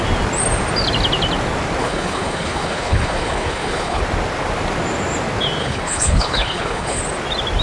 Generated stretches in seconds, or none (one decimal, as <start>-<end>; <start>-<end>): 1.8-4.0; 5.6-7.0

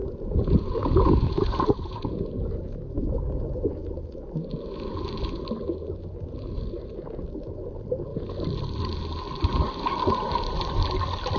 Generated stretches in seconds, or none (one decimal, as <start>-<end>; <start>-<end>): 0.0-2.2

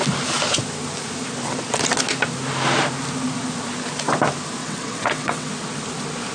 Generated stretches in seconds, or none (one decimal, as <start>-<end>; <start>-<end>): 4.6-5.5

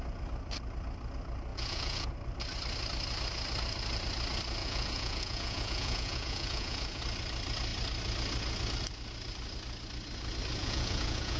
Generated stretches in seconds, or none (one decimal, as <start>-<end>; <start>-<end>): 1.5-2.1; 4.6-7.0; 10.6-11.4

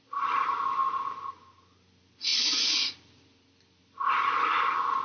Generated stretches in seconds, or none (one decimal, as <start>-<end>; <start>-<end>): none

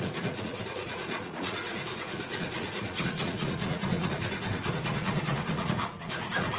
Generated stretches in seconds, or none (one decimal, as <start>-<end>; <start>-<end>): 0.0-6.6